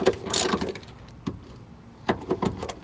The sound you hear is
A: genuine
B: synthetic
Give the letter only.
A